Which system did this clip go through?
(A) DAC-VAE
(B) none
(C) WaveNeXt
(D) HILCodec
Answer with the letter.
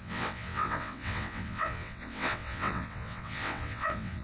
C